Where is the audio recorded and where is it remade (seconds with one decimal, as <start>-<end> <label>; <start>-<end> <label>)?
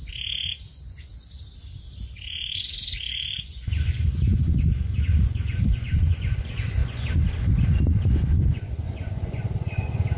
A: 0.0-1.1 remade; 1.1-1.8 recorded; 1.8-10.2 remade